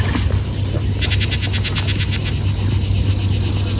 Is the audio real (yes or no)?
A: yes